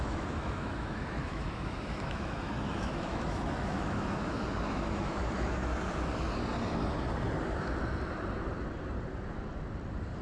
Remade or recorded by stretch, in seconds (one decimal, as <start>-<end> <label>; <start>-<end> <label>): 0.0-5.2 remade; 5.2-10.2 recorded

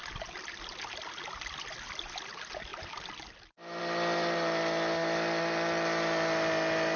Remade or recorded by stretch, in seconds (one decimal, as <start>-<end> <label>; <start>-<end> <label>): 0.0-7.0 recorded

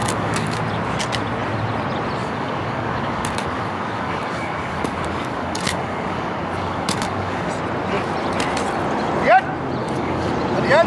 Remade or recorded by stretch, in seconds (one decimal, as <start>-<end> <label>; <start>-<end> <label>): 0.0-0.6 remade; 0.6-2.2 recorded; 2.2-7.5 remade; 7.5-9.8 recorded; 9.8-10.3 remade; 10.3-10.9 recorded

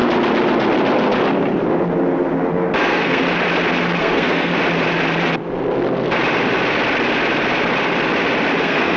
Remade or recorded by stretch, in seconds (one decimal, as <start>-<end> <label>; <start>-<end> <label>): 0.0-2.8 recorded; 2.8-3.2 remade; 3.2-4.0 recorded; 4.0-4.5 remade; 4.5-8.6 recorded; 8.6-9.0 remade